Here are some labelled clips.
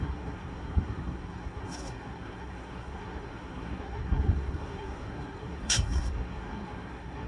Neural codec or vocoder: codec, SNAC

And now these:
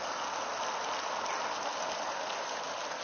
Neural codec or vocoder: none